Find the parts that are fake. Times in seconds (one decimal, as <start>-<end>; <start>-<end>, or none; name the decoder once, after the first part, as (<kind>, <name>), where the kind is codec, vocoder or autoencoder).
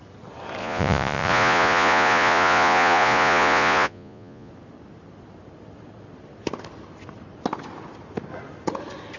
0.6-4.5 (vocoder, Vocos)